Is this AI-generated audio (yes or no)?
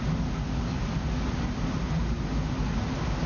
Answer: no